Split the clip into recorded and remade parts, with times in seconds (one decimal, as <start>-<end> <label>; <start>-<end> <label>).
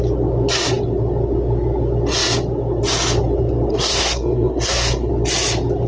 0.0-3.7 recorded; 3.7-5.1 remade; 5.1-5.9 recorded